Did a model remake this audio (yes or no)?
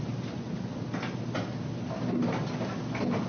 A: no